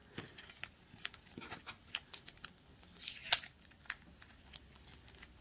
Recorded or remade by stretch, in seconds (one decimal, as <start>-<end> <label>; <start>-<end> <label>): 0.0-5.4 recorded

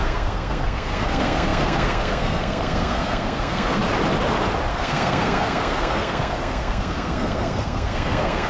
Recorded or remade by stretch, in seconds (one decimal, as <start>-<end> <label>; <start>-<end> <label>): 0.0-3.8 remade; 3.8-4.7 recorded; 4.7-8.5 remade

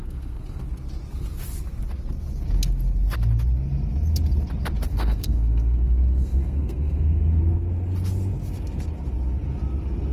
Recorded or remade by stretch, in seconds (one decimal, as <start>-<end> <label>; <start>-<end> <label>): 0.0-0.6 remade; 0.6-4.9 recorded; 4.9-7.4 remade; 7.4-10.1 recorded

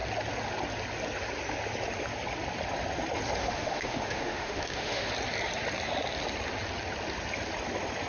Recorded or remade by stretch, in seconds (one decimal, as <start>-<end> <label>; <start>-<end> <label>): 0.0-3.4 recorded; 3.4-5.1 remade; 5.1-8.1 recorded

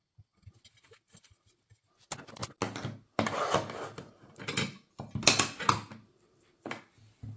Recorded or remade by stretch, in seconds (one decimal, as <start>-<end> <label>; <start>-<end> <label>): 0.0-7.4 recorded

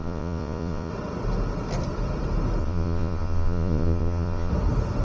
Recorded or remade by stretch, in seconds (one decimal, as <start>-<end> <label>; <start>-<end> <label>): 0.0-0.9 remade; 0.9-2.6 recorded; 2.6-4.5 remade; 4.5-5.0 recorded

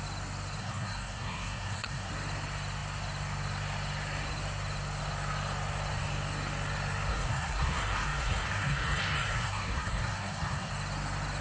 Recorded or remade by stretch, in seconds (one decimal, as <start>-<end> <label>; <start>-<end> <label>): 0.0-0.6 recorded; 0.6-2.1 remade; 2.1-7.1 recorded; 7.1-10.7 remade; 10.7-11.4 recorded

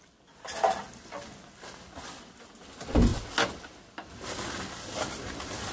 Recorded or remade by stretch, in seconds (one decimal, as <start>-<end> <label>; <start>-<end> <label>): 0.0-5.7 recorded